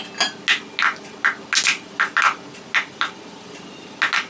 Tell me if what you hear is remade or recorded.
recorded